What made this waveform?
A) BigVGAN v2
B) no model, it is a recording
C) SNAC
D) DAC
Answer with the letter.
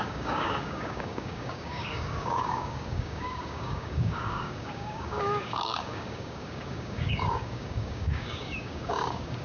D